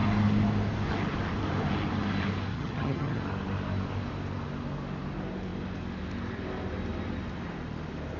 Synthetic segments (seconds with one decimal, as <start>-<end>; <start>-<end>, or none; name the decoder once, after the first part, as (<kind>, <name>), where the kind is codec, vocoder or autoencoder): 2.5-3.2 (vocoder, HiFi-GAN)